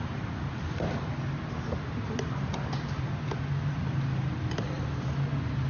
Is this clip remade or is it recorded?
recorded